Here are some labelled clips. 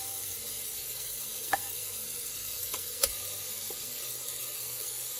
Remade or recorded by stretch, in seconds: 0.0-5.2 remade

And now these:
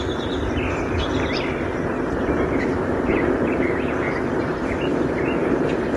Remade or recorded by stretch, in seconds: 0.0-2.2 recorded; 2.2-3.8 remade; 3.8-4.4 recorded; 4.4-5.4 remade; 5.4-6.0 recorded

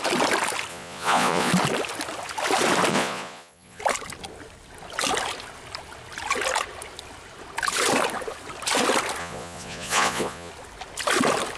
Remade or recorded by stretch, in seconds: 0.0-0.7 recorded; 0.7-1.5 remade; 1.5-2.9 recorded; 2.9-3.8 remade; 3.8-9.2 recorded; 9.2-10.5 remade; 10.5-11.6 recorded

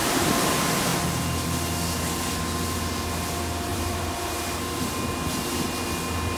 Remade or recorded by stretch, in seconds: 0.0-0.5 remade; 0.5-3.7 recorded; 3.7-4.9 remade; 4.9-6.4 recorded

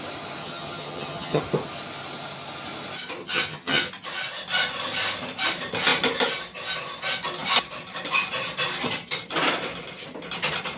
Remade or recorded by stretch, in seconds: 0.0-0.4 recorded; 0.4-1.4 remade; 1.4-3.2 recorded; 3.2-3.9 remade; 3.9-10.8 recorded

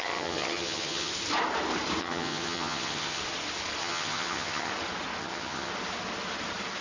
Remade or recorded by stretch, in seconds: 0.0-1.1 remade; 1.1-2.0 recorded; 2.0-3.2 remade; 3.2-3.8 recorded; 3.8-4.7 remade; 4.7-5.2 recorded; 5.2-5.7 remade; 5.7-6.8 recorded

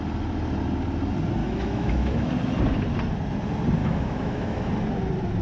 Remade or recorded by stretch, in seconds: 0.0-1.4 recorded; 1.4-2.3 remade; 2.3-3.8 recorded; 3.8-4.7 remade; 4.7-5.4 recorded